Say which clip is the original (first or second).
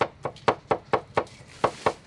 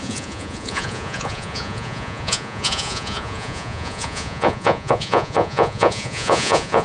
first